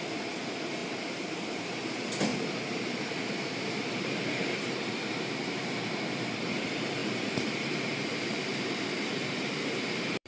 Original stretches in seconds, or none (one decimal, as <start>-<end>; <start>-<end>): 0.0-0.8; 1.8-2.3; 6.6-7.0